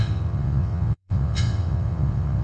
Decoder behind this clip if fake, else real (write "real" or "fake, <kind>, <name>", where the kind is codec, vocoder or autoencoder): fake, vocoder, WaveNeXt